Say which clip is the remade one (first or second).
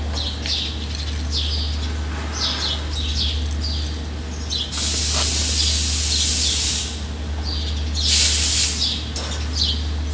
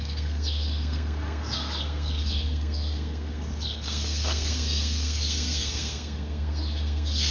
second